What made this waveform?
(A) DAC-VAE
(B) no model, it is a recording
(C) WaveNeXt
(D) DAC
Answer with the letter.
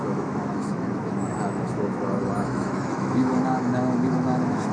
A